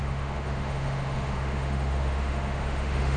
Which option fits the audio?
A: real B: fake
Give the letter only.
B